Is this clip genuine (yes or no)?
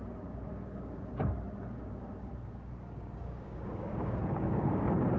no